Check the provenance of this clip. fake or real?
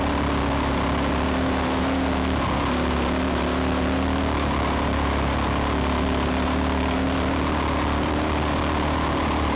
real